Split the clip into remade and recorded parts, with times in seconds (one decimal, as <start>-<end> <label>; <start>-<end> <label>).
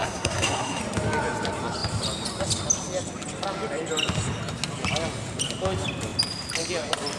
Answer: 0.0-0.8 remade; 0.8-7.2 recorded